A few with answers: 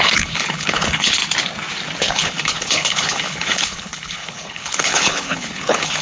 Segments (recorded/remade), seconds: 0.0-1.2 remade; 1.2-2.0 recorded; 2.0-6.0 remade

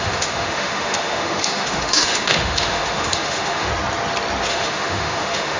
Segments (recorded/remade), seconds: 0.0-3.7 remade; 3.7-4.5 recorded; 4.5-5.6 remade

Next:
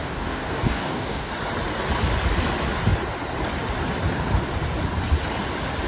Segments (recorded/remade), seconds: 0.0-1.3 remade; 1.3-5.9 recorded